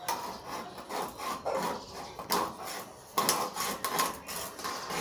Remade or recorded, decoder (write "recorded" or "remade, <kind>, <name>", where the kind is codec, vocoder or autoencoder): recorded